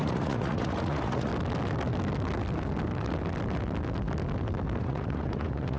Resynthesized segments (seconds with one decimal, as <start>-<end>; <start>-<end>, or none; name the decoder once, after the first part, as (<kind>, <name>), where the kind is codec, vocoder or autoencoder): 0.0-1.3 (vocoder, Vocos); 4.8-5.8